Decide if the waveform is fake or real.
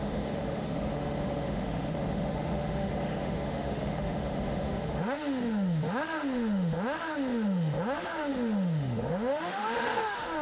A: fake